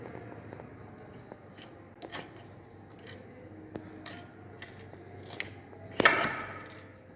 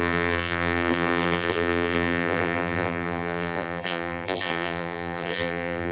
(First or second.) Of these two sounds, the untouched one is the first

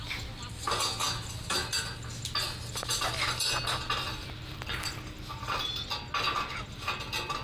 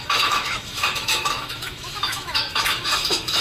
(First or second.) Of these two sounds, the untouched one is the first